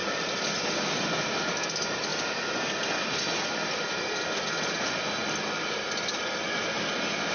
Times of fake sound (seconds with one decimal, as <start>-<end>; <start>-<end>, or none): none